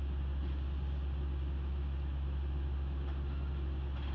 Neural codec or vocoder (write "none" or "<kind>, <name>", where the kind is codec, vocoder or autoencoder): none